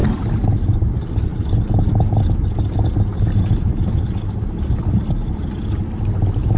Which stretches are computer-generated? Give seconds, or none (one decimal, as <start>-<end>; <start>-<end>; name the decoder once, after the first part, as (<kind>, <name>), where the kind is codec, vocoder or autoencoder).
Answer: 0.0-0.9 (vocoder, BigVGAN v2)